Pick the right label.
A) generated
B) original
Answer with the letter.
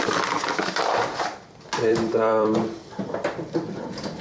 A